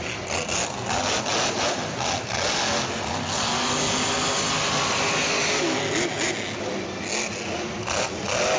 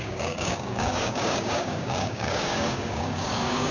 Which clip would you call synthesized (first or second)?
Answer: second